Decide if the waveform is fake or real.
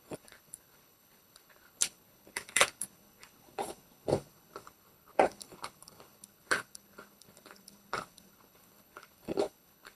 fake